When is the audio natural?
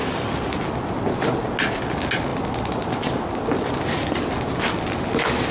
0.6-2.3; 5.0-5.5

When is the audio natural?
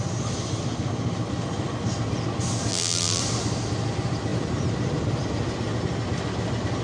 0.0-2.7; 3.2-6.8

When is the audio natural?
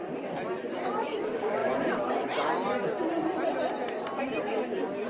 0.0-5.1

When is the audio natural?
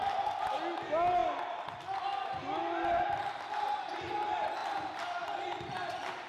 0.0-6.3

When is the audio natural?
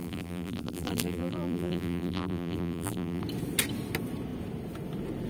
3.2-5.3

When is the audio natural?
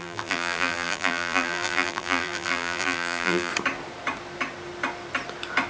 3.5-5.7